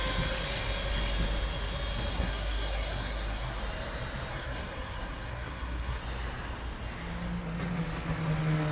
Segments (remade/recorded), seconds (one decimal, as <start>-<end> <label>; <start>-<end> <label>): 0.0-2.1 recorded; 2.1-3.6 remade; 3.6-4.3 recorded; 4.3-6.0 remade; 6.0-8.7 recorded